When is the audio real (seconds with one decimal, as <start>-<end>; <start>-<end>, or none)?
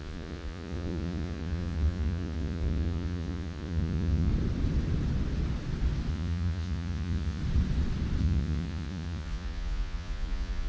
4.3-6.1; 7.4-8.2